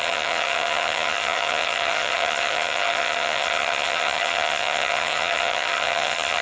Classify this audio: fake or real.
fake